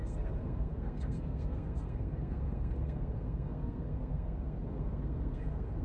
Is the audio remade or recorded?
remade